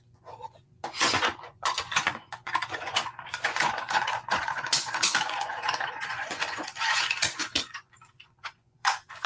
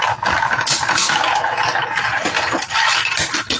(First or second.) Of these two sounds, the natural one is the second